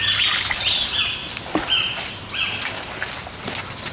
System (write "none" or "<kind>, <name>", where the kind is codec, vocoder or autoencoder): none